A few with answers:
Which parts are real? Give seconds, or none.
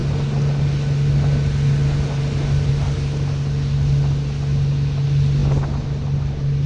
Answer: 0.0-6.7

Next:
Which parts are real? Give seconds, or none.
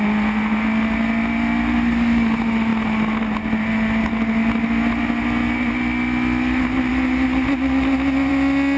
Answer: 0.0-8.8